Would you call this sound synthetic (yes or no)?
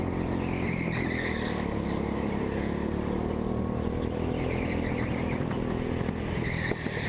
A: no